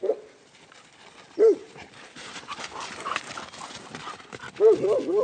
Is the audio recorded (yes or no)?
yes